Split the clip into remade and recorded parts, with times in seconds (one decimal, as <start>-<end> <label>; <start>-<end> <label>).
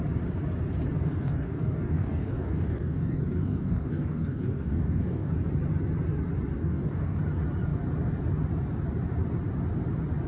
0.0-1.0 recorded; 1.0-5.3 remade; 5.3-6.6 recorded; 6.6-7.2 remade; 7.2-10.3 recorded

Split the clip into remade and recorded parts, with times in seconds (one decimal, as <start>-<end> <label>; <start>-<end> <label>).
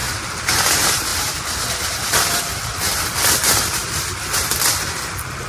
0.0-1.1 recorded; 1.1-3.0 remade; 3.0-5.5 recorded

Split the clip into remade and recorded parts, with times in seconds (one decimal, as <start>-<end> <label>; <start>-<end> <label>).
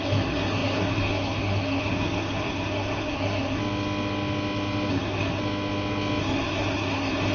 0.0-3.6 remade; 3.6-4.9 recorded; 4.9-5.4 remade; 5.4-6.2 recorded; 6.2-7.3 remade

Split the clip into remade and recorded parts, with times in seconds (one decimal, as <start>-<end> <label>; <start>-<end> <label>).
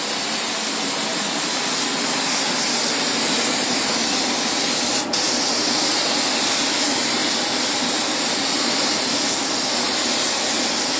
0.0-11.0 recorded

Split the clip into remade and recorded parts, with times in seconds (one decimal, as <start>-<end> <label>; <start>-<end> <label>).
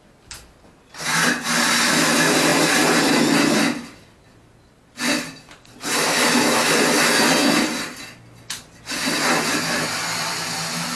0.0-11.0 recorded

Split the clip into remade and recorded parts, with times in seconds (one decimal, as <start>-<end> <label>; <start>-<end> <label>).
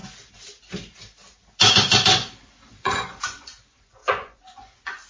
0.0-2.8 recorded; 2.8-5.1 remade